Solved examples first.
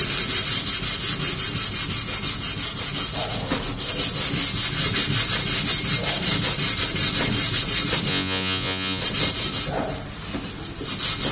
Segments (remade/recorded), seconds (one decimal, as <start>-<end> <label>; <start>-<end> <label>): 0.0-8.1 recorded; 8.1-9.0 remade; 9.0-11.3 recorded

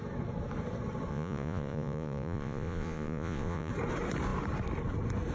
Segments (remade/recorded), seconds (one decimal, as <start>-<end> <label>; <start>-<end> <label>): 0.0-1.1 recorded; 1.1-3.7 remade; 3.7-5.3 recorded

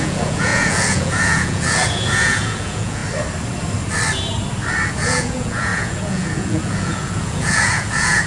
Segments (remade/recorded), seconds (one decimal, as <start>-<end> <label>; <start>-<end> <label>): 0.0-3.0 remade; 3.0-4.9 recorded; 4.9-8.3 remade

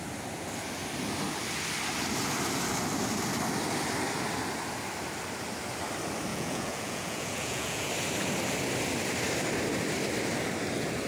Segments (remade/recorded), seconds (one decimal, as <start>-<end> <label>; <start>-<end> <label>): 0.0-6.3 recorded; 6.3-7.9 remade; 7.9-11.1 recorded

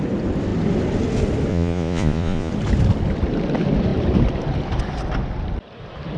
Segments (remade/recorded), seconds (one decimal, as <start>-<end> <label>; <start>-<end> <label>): 0.0-1.5 recorded; 1.5-2.5 remade; 2.5-6.2 recorded

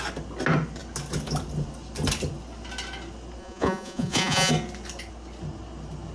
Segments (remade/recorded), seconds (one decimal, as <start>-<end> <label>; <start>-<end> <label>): 0.0-3.4 recorded; 3.4-4.5 remade; 4.5-6.1 recorded